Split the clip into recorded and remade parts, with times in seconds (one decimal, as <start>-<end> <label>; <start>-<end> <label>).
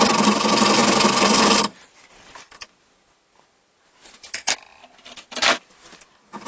0.0-6.5 recorded